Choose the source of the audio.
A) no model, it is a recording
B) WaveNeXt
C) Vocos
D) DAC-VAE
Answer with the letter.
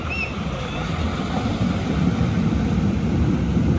A